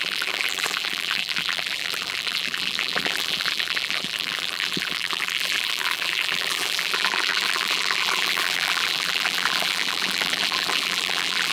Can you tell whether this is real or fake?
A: fake